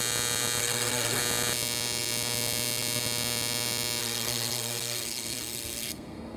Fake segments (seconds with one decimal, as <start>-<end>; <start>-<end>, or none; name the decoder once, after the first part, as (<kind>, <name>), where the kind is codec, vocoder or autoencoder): 0.6-1.2 (codec, SNAC); 4.0-6.4